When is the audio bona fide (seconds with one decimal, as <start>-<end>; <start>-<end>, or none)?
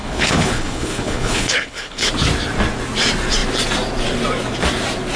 2.1-5.2